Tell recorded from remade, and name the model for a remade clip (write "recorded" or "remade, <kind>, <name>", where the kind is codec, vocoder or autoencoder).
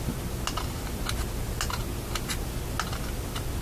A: recorded